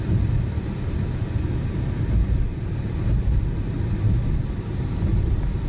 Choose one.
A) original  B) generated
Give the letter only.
A